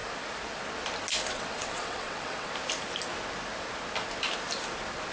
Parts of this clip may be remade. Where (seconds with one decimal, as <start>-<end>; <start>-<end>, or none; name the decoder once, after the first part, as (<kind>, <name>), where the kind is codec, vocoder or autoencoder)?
1.3-2.5 (vocoder, WaveNeXt)